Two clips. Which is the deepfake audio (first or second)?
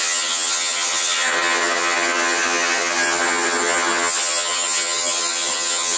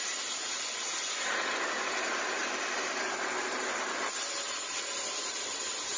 first